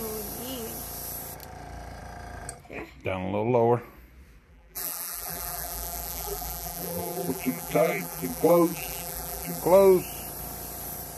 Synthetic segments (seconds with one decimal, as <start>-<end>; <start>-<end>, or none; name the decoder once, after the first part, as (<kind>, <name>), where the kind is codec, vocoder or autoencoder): 4.5-9.6 (vocoder, BigVGAN v2)